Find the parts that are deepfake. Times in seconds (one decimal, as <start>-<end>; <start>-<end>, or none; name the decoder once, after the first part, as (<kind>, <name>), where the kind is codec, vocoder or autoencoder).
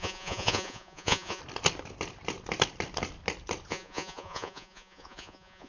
0.0-1.4 (vocoder, Vocos); 3.7-5.7